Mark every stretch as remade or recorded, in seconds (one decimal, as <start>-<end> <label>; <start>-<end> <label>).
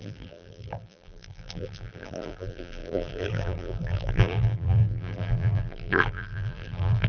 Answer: 0.0-7.1 remade